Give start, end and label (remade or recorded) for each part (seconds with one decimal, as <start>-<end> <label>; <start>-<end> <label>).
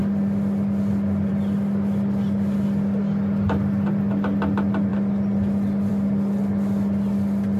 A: 0.0-7.6 recorded